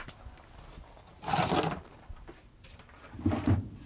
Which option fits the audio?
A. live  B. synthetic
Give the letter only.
A